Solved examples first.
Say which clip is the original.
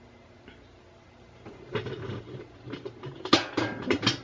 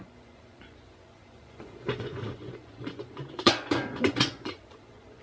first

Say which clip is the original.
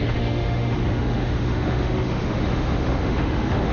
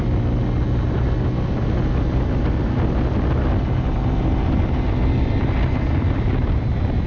second